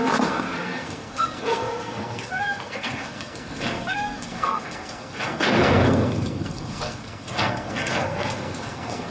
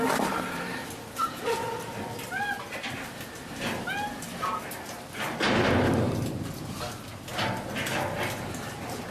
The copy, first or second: first